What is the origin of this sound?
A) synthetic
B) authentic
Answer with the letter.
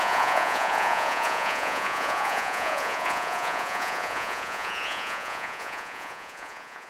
A